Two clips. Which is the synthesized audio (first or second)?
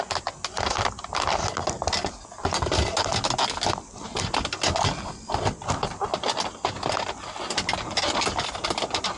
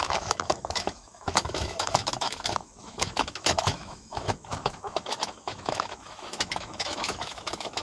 second